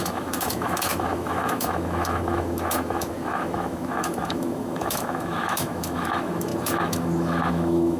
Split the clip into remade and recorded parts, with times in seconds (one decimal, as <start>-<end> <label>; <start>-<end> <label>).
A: 0.0-8.0 remade